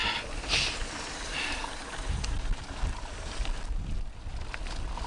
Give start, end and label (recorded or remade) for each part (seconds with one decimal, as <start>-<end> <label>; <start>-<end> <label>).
0.0-5.1 recorded